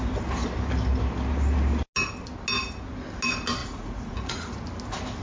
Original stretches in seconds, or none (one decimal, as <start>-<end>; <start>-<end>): 0.0-3.6; 4.6-5.2

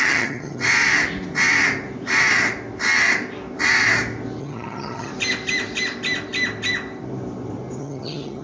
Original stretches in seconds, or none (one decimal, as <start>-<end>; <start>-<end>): 0.6-4.4; 5.1-7.8

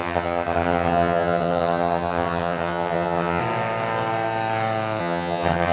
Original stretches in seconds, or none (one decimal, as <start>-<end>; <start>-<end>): 3.4-5.0

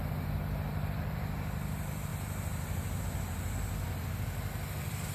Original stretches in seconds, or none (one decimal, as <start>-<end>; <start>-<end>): 0.0-0.7

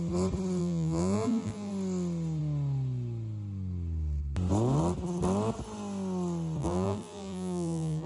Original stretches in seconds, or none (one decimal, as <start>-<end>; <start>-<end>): 0.0-0.6; 1.7-6.6